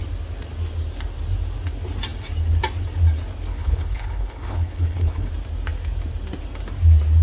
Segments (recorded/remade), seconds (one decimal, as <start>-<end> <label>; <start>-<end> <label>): 0.0-3.5 recorded; 3.5-5.3 remade; 5.3-7.2 recorded